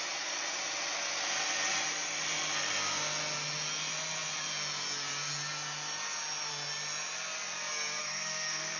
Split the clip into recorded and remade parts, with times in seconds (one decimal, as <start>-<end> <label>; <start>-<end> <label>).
0.0-8.0 recorded; 8.0-8.8 remade